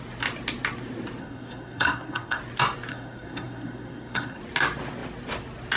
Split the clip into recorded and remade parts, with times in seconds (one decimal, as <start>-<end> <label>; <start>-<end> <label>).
0.0-1.2 recorded; 1.2-2.4 remade; 2.4-2.9 recorded; 2.9-4.4 remade; 4.4-5.8 recorded